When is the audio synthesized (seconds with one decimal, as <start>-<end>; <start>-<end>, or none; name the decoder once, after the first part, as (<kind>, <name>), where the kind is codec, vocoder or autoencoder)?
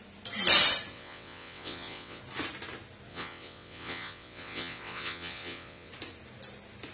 0.9-2.2 (vocoder, WaveNeXt); 3.1-5.9